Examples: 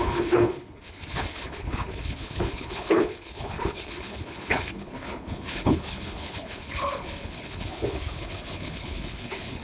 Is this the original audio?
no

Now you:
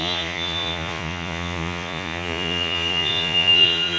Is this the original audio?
no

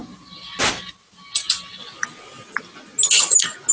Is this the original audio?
yes